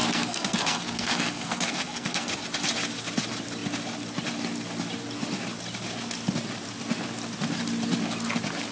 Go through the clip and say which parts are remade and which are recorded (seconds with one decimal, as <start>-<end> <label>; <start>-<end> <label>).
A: 0.0-2.3 remade; 2.3-8.7 recorded